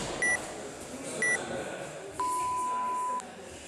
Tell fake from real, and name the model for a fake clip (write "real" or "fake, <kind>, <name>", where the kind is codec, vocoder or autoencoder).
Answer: real